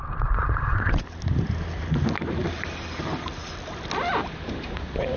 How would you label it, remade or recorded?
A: recorded